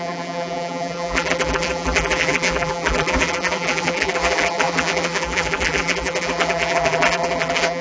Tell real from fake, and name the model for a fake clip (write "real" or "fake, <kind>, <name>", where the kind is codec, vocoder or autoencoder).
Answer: fake, vocoder, BigVGAN v2